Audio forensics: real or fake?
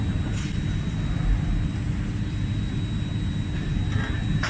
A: real